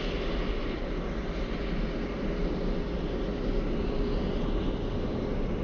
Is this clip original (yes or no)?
yes